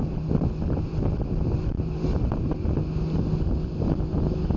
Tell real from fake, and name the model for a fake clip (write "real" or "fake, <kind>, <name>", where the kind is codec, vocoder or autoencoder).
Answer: real